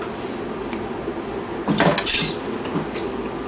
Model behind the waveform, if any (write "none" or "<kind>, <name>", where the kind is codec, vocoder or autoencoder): none